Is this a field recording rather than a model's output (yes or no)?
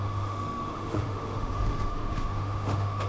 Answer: no